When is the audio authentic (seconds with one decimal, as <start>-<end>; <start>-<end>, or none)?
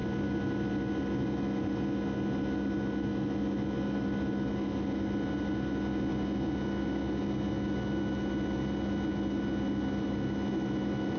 0.0-11.2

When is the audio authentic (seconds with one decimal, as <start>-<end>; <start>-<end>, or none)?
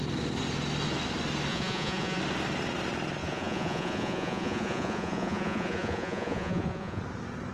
0.0-1.5; 2.2-3.2; 7.0-7.5